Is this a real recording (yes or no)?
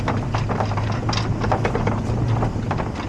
yes